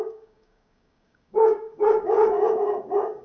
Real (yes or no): no